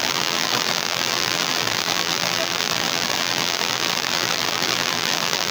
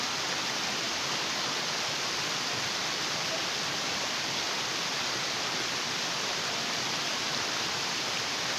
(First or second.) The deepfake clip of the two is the first